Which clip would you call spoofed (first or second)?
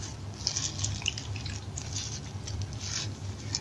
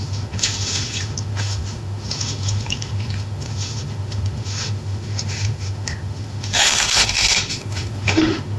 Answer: second